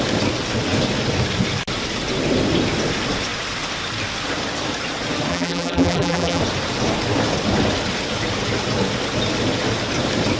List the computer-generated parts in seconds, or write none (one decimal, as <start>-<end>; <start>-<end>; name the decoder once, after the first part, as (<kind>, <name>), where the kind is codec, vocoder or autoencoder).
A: 5.3-6.4 (vocoder, BigVGAN v2)